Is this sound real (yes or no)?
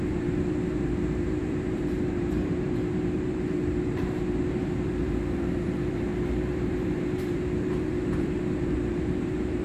no